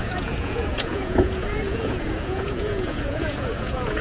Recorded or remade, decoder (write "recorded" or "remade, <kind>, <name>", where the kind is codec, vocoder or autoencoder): remade, vocoder, Vocos